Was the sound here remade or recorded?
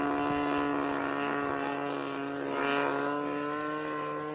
recorded